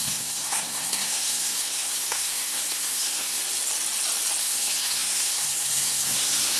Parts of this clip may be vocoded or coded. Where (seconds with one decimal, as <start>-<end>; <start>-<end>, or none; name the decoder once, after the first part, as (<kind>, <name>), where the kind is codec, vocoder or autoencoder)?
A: 0.0-3.4 (codec, SNAC); 4.4-6.6